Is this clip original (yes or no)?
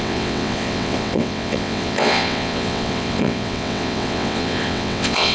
no